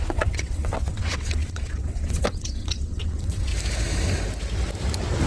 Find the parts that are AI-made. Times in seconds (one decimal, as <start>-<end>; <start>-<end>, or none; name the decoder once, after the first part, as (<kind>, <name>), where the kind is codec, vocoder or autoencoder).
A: 0.0-3.5 (vocoder, WaveNeXt)